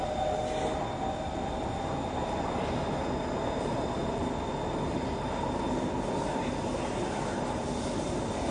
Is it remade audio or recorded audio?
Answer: recorded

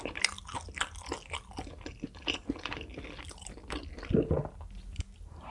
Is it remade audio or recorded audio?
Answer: recorded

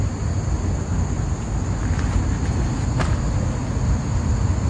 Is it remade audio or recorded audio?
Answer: recorded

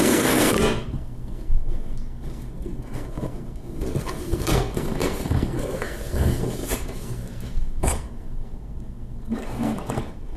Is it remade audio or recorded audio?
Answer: remade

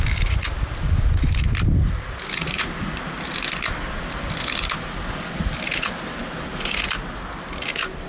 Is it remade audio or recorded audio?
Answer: recorded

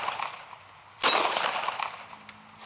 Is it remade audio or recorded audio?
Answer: recorded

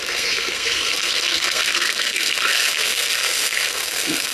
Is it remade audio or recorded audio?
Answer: remade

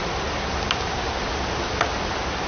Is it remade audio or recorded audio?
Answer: recorded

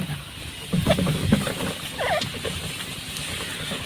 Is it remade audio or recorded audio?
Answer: recorded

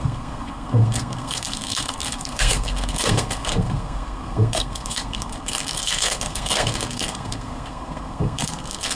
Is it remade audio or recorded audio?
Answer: remade